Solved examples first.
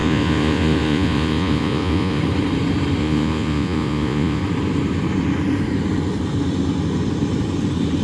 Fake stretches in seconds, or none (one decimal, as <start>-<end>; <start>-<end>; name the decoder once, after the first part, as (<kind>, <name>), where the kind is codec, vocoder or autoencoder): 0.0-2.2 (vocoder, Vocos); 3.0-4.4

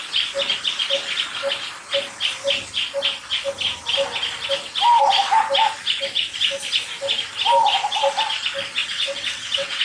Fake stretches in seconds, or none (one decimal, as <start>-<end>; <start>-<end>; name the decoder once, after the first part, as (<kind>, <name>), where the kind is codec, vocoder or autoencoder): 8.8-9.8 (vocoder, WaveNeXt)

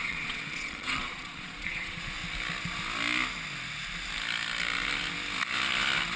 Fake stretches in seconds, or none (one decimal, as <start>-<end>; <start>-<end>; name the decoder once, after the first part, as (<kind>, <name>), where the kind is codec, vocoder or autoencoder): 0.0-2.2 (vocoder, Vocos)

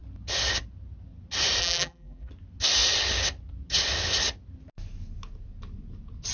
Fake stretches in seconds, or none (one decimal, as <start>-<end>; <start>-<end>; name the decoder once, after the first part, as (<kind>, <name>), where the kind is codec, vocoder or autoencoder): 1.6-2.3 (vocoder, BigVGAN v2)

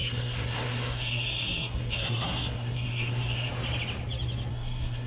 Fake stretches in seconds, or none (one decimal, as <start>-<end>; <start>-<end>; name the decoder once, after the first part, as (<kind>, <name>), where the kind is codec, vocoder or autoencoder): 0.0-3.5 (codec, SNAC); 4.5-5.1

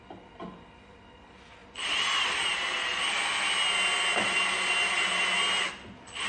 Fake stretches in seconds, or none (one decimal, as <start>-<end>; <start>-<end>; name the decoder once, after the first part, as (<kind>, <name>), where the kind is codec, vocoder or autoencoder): none